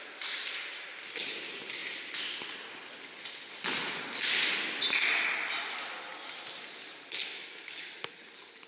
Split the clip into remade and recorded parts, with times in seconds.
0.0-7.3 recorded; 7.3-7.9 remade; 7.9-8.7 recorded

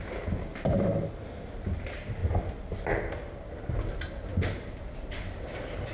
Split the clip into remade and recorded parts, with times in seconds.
0.0-5.9 recorded

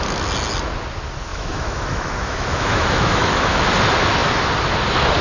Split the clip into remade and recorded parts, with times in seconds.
0.0-1.3 recorded; 1.3-3.7 remade; 3.7-5.2 recorded

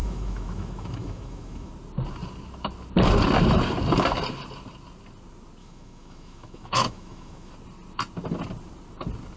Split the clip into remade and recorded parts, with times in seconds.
0.0-1.7 remade; 1.7-5.6 recorded; 5.6-7.5 remade; 7.5-9.4 recorded

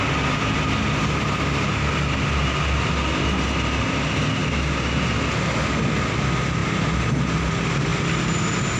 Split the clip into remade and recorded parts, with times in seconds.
0.0-8.8 recorded

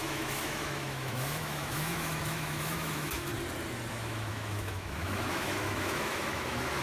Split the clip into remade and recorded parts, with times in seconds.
0.0-3.3 remade; 3.3-3.9 recorded; 3.9-6.8 remade